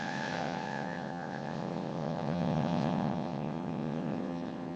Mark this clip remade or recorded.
remade